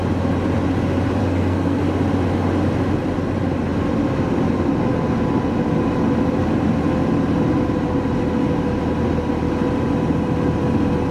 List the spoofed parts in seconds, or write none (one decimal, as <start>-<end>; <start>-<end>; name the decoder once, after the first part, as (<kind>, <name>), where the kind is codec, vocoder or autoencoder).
1.2-1.8 (codec, SNAC)